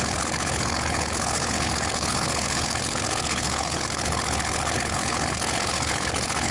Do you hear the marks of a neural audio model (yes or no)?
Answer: yes